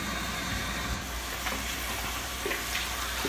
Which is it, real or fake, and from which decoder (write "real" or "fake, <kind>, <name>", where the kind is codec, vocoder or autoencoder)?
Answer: fake, vocoder, BigVGAN v2